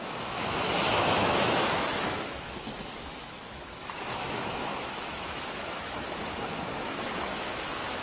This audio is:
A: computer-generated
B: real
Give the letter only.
A